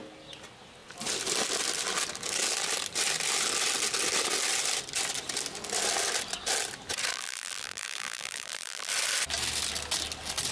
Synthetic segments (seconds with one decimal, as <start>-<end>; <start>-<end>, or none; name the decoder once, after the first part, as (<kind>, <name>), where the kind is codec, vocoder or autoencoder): 7.1-8.9 (vocoder, BigVGAN v2)